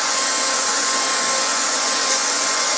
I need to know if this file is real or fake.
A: fake